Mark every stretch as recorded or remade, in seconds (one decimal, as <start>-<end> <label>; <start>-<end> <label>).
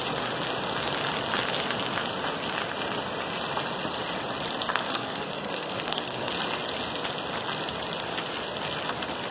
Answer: 0.0-4.7 recorded; 4.7-6.3 remade; 6.3-9.3 recorded